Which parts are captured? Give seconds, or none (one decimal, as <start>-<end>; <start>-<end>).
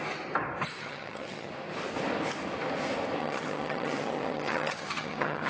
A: 0.0-0.8; 1.5-3.2